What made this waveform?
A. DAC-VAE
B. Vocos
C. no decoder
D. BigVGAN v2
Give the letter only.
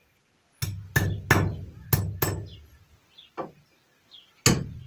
C